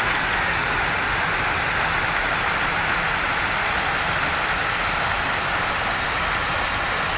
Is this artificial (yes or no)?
no